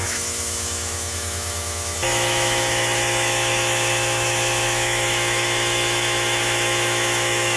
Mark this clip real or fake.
fake